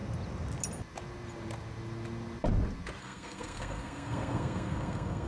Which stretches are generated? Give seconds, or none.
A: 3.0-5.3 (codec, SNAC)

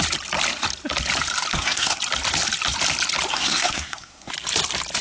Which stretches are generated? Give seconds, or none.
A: 1.5-2.0 (codec, SNAC); 3.3-4.3

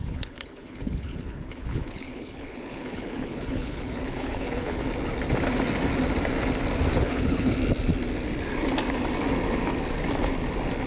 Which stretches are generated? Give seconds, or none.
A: 0.0-4.8 (codec, HILCodec); 6.9-7.5